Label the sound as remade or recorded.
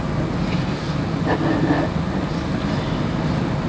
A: recorded